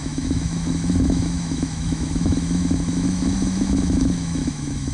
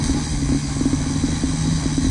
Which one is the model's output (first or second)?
first